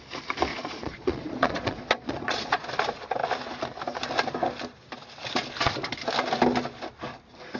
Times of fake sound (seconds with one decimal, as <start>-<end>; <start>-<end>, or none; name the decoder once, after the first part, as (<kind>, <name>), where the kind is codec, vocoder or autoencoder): 0.5-2.7 (vocoder, Vocos)